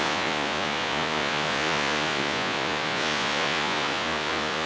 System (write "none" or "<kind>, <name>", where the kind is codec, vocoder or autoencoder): vocoder, Vocos